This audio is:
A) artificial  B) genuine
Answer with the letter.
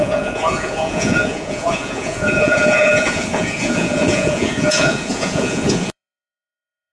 A